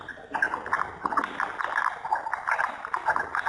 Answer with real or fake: real